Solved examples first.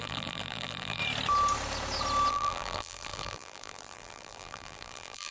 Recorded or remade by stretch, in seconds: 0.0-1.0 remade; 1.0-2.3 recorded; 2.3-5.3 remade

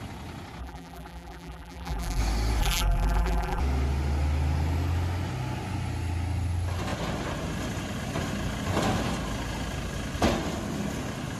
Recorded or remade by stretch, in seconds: 0.0-0.6 recorded; 0.6-2.2 remade; 2.2-2.6 recorded; 2.6-3.6 remade; 3.6-11.4 recorded

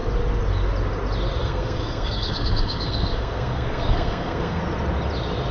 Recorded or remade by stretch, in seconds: 0.0-1.4 recorded; 1.4-4.6 remade; 4.6-5.5 recorded